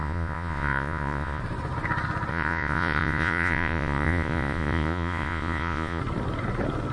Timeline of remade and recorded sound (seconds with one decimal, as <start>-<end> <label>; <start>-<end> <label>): 0.0-1.4 remade; 1.4-2.3 recorded; 2.3-6.0 remade; 6.0-6.9 recorded